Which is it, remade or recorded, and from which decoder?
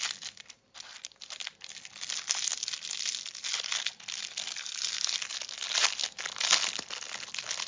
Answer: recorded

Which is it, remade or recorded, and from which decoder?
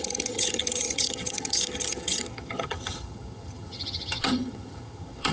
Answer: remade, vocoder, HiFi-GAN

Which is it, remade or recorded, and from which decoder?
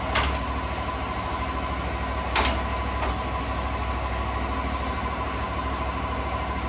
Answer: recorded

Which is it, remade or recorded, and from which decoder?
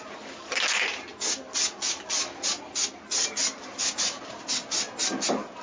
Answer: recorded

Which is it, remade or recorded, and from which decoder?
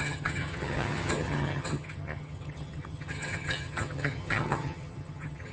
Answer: remade, vocoder, HiFi-GAN